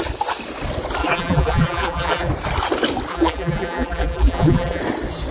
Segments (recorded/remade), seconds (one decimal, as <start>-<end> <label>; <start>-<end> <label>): 0.0-1.0 recorded; 1.0-2.3 remade; 2.3-3.1 recorded; 3.1-4.8 remade; 4.8-5.3 recorded